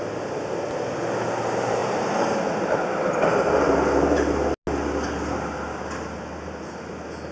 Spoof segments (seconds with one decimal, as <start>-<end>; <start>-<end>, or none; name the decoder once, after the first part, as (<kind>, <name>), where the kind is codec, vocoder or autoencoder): none